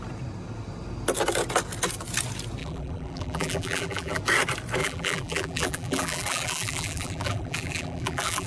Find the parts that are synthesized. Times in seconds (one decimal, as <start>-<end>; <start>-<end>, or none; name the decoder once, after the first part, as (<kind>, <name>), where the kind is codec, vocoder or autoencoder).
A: 2.6-4.2 (vocoder, BigVGAN v2); 4.8-8.5